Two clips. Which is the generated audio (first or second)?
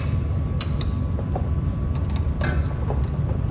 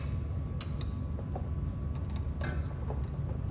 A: first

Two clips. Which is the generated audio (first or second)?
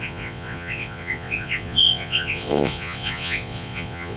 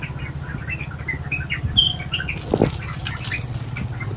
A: first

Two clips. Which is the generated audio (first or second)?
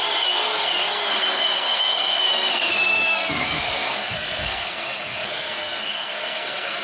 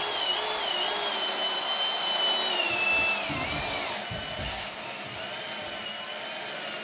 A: first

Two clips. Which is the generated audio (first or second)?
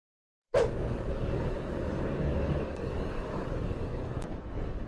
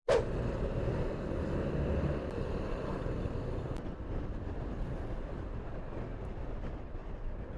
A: first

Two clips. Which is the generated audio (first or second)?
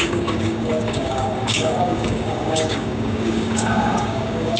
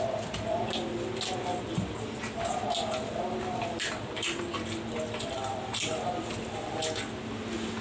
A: first